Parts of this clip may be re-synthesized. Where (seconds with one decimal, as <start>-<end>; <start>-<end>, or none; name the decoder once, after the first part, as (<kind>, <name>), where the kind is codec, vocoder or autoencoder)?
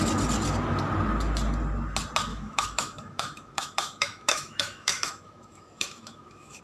2.3-6.6 (autoencoder, DAC-VAE)